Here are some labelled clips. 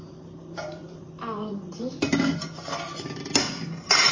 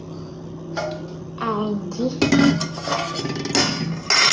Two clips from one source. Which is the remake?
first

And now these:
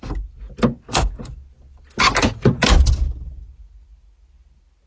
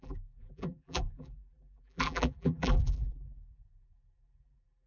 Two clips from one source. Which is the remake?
second